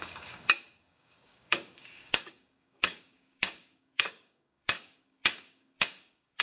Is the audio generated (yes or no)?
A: yes